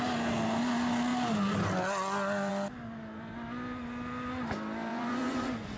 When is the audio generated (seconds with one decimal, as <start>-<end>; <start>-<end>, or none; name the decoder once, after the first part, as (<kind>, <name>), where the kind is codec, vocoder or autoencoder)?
4.9-5.8 (vocoder, Vocos)